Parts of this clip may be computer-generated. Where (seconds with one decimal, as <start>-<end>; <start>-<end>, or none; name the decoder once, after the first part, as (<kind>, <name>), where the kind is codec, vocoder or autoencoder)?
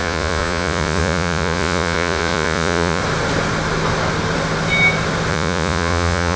0.0-3.0 (vocoder, Vocos); 5.3-6.4